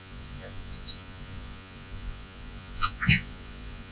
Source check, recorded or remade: remade